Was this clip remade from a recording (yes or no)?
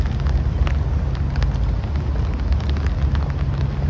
no